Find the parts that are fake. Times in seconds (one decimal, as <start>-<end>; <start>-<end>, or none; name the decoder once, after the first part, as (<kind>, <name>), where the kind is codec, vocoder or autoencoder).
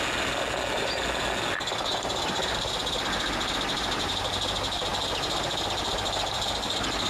none